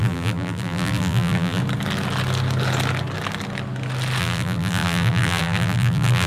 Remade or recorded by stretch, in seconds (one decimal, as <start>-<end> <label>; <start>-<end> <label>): 0.0-1.6 remade; 1.6-4.2 recorded; 4.2-6.3 remade